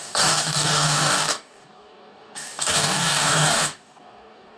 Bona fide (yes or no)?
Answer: no